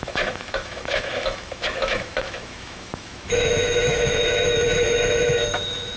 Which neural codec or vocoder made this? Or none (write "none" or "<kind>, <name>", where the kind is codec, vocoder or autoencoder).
autoencoder, DAC-VAE